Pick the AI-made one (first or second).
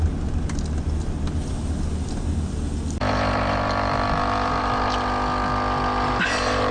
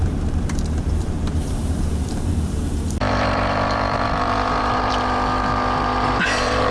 second